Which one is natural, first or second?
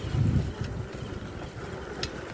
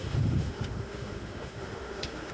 first